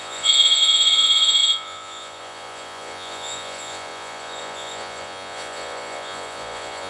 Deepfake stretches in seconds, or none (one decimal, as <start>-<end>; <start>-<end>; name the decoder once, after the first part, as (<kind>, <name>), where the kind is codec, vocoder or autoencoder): 0.0-6.9 (vocoder, Vocos)